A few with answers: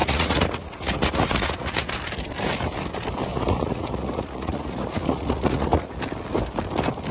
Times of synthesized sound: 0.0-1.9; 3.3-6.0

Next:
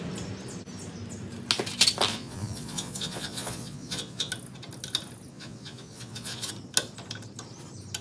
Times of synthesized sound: 2.1-4.3; 5.3-6.5

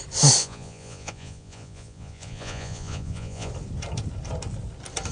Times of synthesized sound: 0.4-3.5

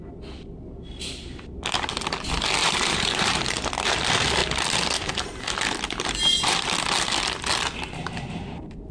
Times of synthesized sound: 2.6-3.7

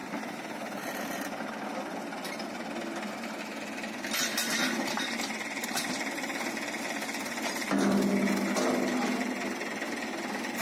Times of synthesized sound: 4.6-5.8

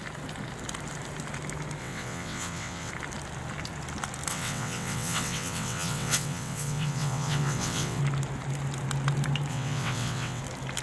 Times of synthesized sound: 1.8-2.9; 4.3-8.0; 9.5-10.4